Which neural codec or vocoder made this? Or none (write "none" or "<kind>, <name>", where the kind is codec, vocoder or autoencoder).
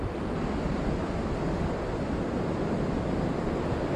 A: none